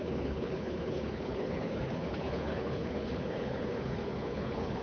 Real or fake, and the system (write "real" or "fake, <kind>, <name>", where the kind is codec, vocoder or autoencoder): fake, codec, HILCodec